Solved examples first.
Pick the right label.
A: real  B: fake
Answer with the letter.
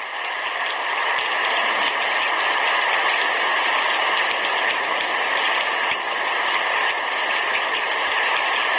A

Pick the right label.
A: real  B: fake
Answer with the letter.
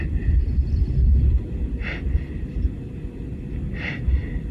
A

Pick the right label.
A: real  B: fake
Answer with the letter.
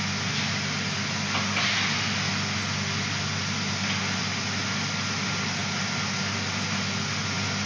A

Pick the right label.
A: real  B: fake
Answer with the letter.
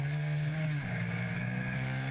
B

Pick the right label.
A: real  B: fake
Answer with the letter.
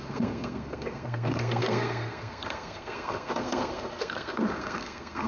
B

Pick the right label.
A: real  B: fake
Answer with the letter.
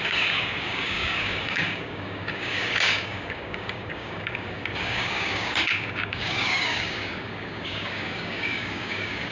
B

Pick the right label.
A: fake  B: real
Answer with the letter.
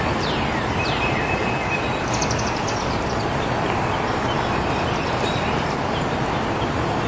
B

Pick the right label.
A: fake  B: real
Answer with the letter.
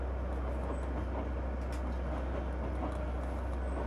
B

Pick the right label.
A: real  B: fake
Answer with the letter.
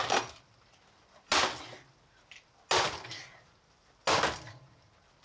A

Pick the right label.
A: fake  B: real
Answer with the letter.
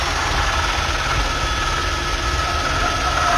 B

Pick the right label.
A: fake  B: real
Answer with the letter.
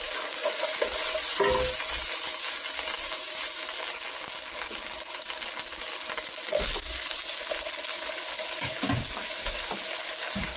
B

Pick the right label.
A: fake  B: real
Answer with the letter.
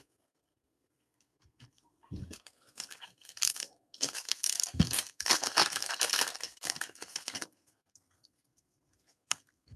A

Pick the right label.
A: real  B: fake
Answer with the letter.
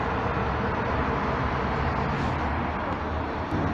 A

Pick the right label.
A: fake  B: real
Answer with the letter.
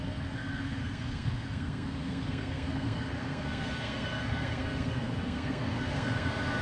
A